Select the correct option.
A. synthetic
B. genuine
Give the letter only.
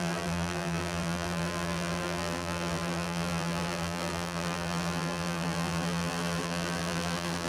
A